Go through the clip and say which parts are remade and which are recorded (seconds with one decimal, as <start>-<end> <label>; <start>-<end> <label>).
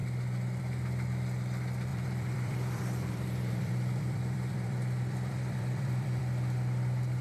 0.0-1.9 recorded; 1.9-6.2 remade; 6.2-7.2 recorded